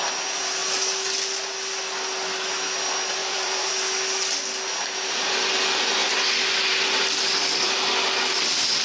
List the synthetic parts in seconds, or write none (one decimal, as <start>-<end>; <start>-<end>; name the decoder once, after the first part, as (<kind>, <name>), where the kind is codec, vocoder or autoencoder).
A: 3.2-3.7 (vocoder, BigVGAN v2)